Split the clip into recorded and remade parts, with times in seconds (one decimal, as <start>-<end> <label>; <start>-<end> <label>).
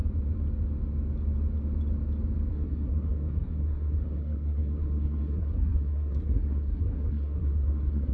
0.0-2.5 recorded; 2.5-8.1 remade